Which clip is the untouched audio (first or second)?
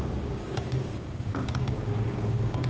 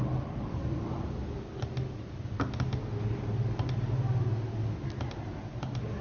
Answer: second